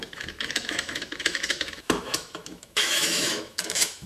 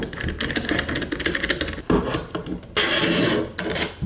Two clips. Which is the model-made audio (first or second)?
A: first